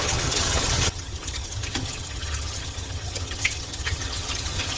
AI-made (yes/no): yes